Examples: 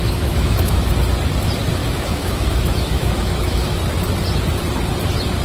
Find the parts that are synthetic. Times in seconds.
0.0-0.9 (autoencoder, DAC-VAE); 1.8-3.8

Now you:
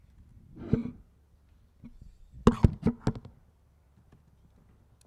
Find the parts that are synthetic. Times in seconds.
none

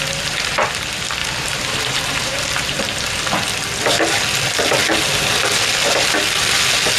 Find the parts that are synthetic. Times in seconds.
1.2-2.8 (vocoder, BigVGAN v2)

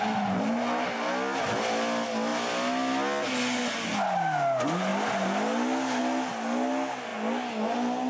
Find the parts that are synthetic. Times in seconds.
none

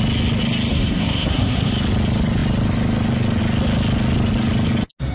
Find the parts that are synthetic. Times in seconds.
0.7-1.7 (codec, SNAC)

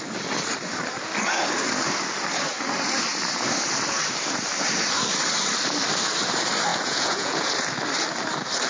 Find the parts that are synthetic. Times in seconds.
6.7-7.5 (vocoder, Vocos)